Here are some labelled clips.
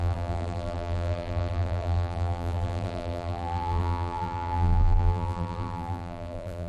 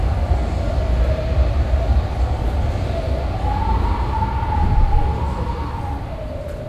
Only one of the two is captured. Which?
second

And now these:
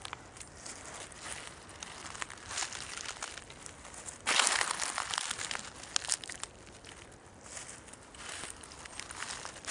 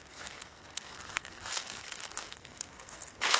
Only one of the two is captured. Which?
first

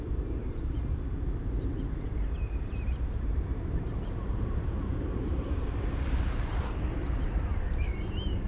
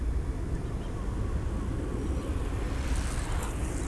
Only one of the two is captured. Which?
second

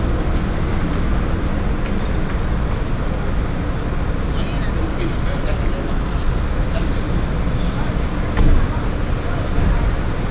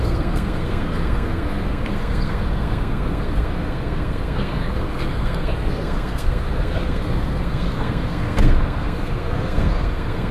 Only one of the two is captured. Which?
first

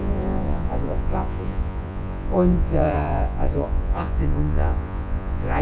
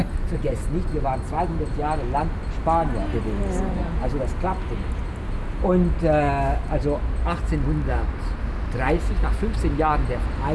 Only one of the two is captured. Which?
second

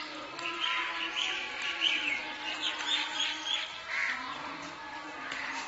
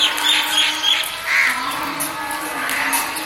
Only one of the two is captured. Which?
second